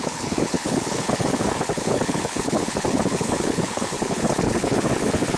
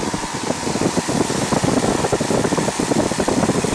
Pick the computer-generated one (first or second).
first